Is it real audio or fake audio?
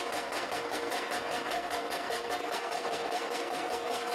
fake